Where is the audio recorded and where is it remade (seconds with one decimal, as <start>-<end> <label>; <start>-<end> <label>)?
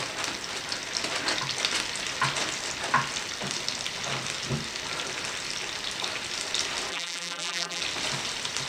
0.0-6.9 recorded; 6.9-7.8 remade; 7.8-8.7 recorded